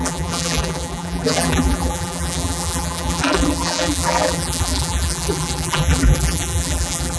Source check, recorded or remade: remade